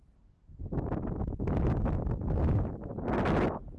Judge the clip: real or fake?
real